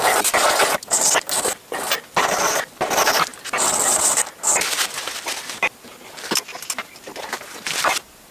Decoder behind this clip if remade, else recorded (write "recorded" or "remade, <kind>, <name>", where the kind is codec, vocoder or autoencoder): recorded